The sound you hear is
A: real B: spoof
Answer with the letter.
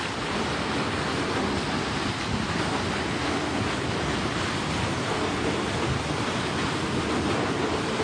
A